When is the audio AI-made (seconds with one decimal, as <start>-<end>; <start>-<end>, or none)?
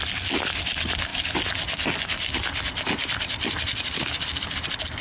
none